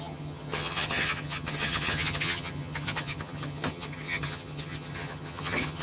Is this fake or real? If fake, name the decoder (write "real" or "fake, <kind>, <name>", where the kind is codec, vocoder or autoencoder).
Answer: fake, vocoder, HiFi-GAN